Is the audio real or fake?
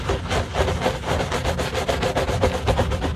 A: real